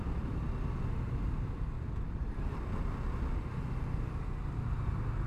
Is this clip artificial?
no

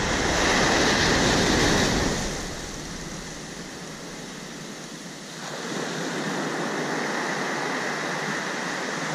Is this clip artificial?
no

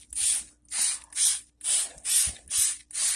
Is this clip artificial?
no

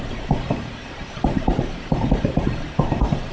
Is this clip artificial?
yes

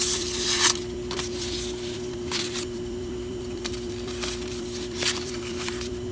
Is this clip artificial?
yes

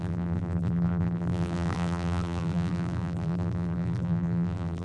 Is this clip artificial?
yes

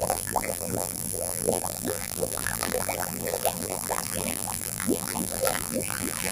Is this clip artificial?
yes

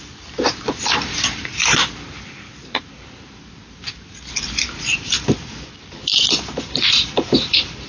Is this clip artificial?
yes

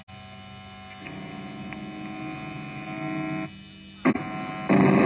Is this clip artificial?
no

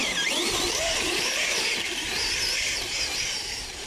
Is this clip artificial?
yes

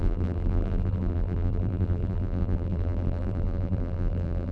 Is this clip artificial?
yes